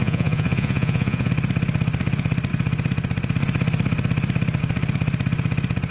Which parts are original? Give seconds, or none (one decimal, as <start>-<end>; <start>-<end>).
1.3-5.9